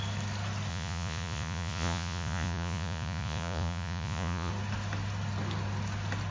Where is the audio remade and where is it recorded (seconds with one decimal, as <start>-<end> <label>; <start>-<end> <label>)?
0.0-0.7 recorded; 0.7-4.5 remade; 4.5-6.3 recorded